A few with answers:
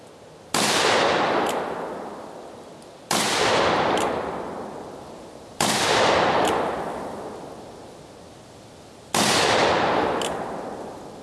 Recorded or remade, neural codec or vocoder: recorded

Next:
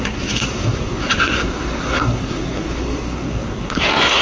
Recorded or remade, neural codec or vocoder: remade, codec, SNAC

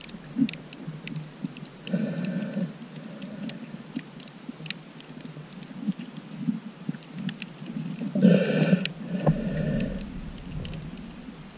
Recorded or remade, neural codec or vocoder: recorded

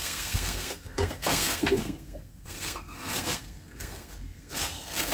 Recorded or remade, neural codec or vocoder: remade, codec, SNAC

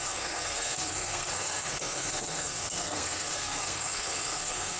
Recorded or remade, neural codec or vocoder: remade, codec, SNAC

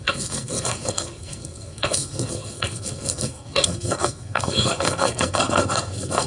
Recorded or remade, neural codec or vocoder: remade, codec, SNAC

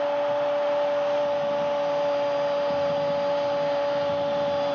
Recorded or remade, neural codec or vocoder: recorded